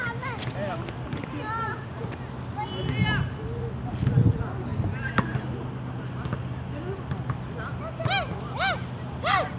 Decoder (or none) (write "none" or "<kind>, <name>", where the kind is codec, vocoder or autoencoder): none